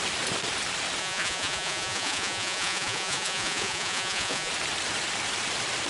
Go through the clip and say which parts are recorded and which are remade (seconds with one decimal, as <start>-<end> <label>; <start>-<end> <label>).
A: 0.0-1.0 recorded; 1.0-4.5 remade; 4.5-5.9 recorded